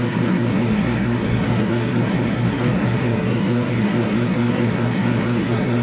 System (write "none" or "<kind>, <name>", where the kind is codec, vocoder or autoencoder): codec, SNAC